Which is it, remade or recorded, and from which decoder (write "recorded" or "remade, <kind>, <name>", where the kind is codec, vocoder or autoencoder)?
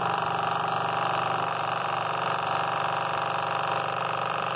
remade, vocoder, BigVGAN v2